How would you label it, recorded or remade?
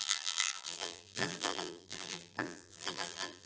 remade